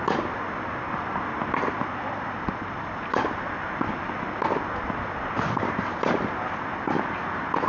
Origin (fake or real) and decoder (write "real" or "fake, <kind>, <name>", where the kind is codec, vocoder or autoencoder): real